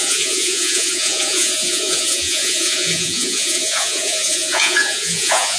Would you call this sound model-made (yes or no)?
yes